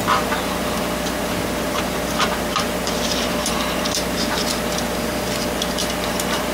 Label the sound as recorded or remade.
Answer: remade